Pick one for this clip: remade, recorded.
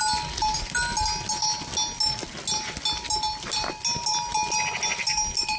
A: recorded